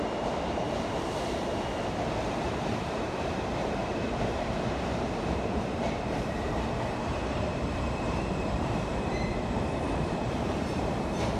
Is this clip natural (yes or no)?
no